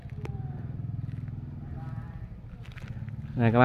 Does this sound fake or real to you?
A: real